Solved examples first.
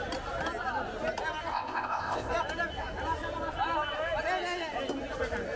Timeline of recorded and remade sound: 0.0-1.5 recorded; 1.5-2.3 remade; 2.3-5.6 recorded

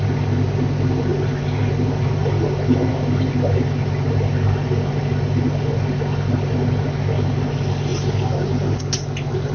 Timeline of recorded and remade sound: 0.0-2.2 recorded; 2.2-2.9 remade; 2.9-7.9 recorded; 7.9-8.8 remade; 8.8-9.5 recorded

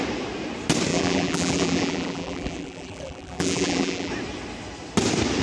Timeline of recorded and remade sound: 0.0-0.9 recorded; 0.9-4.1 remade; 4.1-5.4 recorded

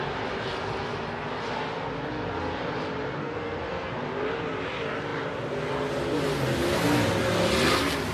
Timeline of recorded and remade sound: 0.0-3.2 recorded; 3.2-3.9 remade; 3.9-8.1 recorded

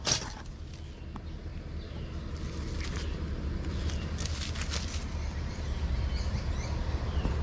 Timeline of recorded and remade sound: 0.0-7.4 recorded